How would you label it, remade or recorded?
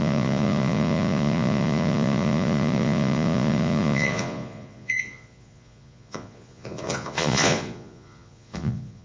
remade